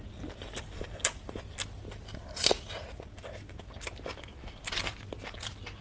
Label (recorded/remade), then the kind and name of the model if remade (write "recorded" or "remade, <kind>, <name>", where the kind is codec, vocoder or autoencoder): recorded